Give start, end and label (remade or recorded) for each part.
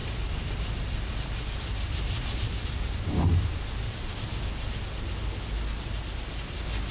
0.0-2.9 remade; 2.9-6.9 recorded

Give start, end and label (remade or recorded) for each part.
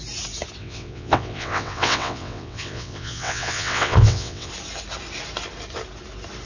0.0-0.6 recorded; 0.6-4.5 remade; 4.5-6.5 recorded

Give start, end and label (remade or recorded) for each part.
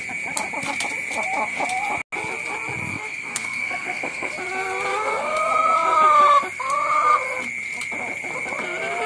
0.0-2.9 recorded; 2.9-4.3 remade; 4.3-4.9 recorded; 4.9-5.5 remade; 5.5-9.1 recorded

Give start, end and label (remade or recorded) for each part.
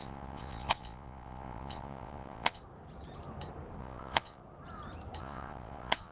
0.0-2.6 remade; 2.6-3.8 recorded; 3.8-4.4 remade; 4.4-5.2 recorded; 5.2-6.1 remade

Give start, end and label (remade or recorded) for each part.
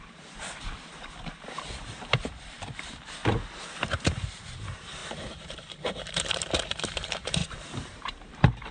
0.0-3.2 remade; 3.2-3.9 recorded; 3.9-8.7 remade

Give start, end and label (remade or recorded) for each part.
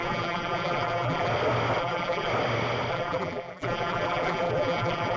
0.0-1.3 remade; 1.3-1.8 recorded; 1.8-2.3 remade; 2.3-2.9 recorded; 2.9-5.2 remade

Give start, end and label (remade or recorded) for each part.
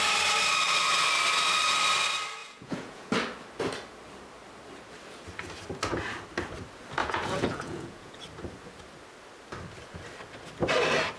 0.0-2.4 recorded; 2.4-3.1 remade; 3.1-7.0 recorded; 7.0-8.2 remade; 8.2-11.2 recorded